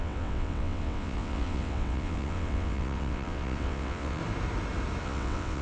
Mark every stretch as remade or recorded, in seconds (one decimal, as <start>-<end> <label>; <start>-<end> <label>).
0.0-4.2 remade; 4.2-5.0 recorded; 5.0-5.6 remade